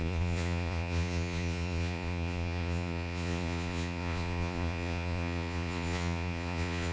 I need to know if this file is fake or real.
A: fake